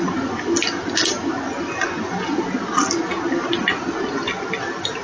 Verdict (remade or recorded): recorded